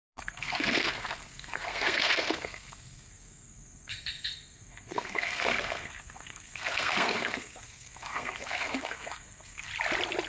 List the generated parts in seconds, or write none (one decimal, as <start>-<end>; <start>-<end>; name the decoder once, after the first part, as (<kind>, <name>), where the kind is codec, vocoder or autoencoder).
0.0-9.7 (codec, SNAC)